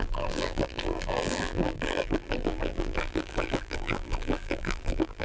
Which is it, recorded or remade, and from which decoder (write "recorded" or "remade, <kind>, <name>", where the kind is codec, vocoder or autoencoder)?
remade, vocoder, BigVGAN v2